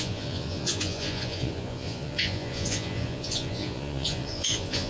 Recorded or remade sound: remade